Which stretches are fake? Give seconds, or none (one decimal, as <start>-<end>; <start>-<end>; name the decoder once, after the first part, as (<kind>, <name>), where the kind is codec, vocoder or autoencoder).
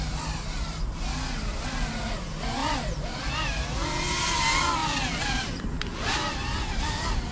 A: 2.6-3.2 (vocoder, BigVGAN v2)